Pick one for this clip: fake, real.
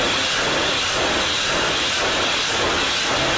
real